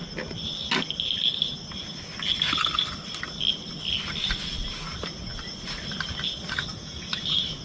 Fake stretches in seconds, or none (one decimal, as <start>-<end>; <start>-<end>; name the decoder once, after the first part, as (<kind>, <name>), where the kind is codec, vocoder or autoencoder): 6.7-7.6 (autoencoder, DAC-VAE)